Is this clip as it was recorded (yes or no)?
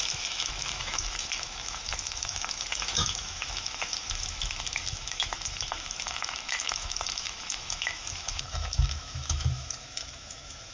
no